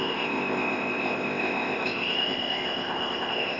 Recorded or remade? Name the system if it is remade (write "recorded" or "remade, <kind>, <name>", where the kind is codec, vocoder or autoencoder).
remade, codec, ZipCodec